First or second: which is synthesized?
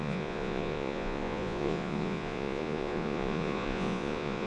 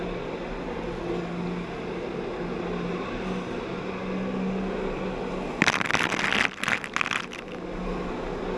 first